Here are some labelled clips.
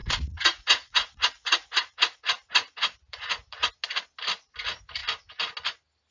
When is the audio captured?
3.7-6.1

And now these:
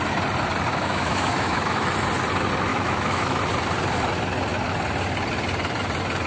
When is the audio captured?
0.0-0.7; 1.9-2.7; 3.4-6.3

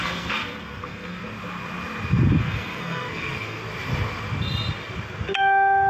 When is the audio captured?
1.2-2.4; 3.6-5.9